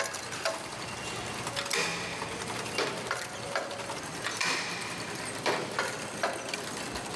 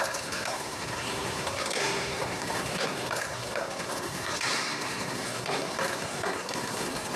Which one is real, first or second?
first